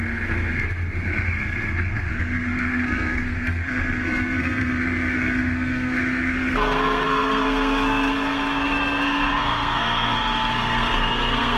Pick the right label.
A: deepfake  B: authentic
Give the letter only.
A